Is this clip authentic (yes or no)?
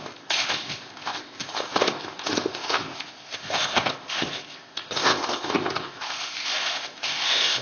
no